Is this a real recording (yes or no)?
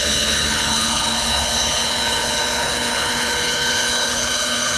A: no